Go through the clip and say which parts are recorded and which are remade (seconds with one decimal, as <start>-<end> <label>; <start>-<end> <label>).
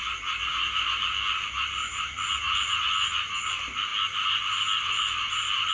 0.0-5.7 recorded